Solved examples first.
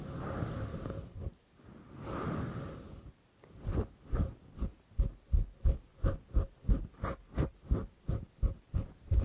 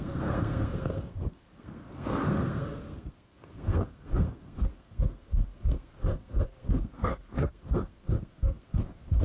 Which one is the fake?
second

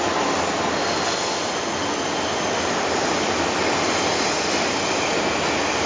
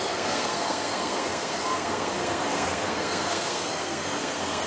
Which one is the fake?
second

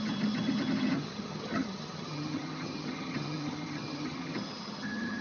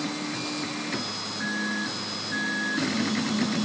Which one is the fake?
first